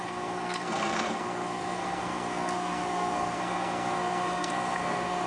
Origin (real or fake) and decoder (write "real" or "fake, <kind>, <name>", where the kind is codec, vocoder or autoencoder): fake, codec, SNAC